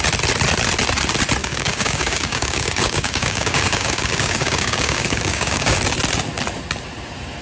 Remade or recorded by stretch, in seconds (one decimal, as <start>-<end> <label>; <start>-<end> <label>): 0.0-1.4 recorded; 1.4-5.8 remade; 5.8-7.4 recorded